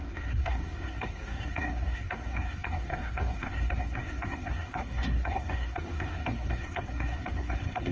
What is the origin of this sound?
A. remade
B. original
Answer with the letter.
A